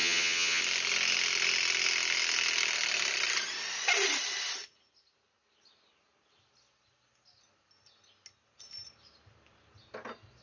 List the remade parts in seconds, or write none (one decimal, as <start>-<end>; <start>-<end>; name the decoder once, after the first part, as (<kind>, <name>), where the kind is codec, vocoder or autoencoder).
0.0-0.6 (vocoder, HiFi-GAN)